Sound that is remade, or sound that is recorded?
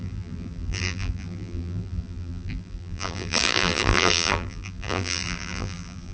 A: remade